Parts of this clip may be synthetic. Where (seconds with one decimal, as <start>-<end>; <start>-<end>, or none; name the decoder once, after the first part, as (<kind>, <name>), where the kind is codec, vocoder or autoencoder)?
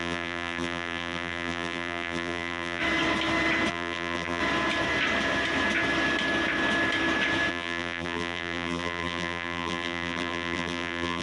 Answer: 0.0-2.8 (vocoder, BigVGAN v2); 3.7-4.4; 7.5-11.2